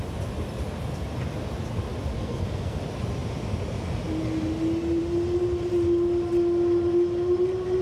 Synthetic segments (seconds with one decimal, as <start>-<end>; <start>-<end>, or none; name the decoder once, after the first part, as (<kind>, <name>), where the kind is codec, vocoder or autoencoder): 2.1-2.8 (codec, SNAC)